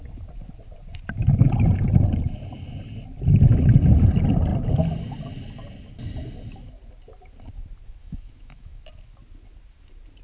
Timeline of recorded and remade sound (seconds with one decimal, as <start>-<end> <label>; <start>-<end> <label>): 0.0-8.0 recorded; 8.0-8.8 remade; 8.8-10.2 recorded